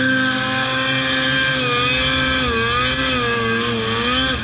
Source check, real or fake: real